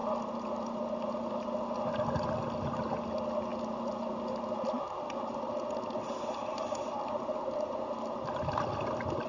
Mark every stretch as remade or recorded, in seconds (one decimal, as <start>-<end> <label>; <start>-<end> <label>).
0.0-9.3 recorded